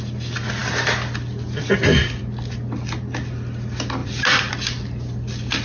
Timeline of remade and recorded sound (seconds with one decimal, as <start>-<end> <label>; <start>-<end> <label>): 0.0-4.0 recorded; 4.0-4.5 remade; 4.5-5.6 recorded